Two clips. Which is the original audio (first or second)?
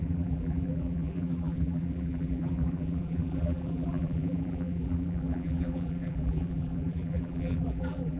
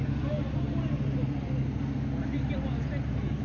second